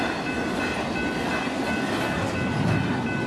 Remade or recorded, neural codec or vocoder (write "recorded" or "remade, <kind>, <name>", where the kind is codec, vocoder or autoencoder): recorded